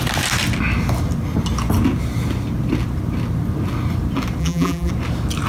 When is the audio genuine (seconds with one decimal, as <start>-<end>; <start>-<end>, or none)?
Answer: 0.0-4.4; 4.9-5.5

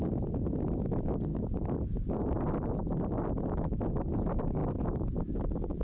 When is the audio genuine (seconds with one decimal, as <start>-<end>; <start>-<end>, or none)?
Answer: 0.0-4.6; 5.3-5.8

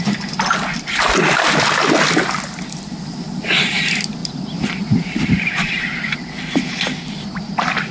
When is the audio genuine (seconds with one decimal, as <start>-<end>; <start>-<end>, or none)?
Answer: 0.0-4.2; 5.8-7.9

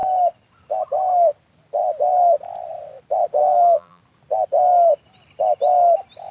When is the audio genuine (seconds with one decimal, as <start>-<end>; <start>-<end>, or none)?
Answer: 0.0-3.4; 4.0-6.3

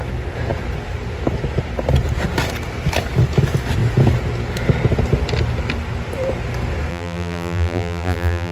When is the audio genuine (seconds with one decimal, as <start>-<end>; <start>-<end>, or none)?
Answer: 0.0-6.9

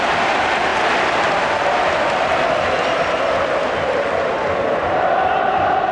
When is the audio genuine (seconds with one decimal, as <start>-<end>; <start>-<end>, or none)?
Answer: 0.0-5.9

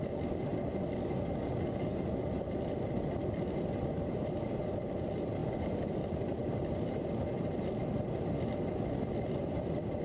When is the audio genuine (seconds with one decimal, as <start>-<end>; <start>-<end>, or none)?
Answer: 0.0-1.9; 2.9-5.4; 5.9-10.0